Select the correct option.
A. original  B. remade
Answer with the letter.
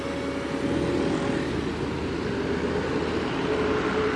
A